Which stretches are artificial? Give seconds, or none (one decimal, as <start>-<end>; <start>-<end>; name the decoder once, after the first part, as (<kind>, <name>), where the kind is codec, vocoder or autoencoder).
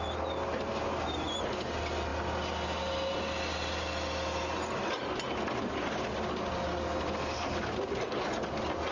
none